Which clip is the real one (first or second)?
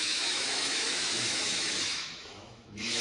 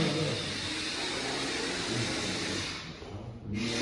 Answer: second